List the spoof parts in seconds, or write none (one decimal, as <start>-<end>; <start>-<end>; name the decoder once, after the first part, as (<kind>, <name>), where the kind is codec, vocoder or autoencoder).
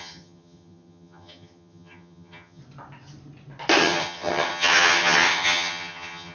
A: 0.0-2.6 (vocoder, HiFi-GAN); 3.8-6.3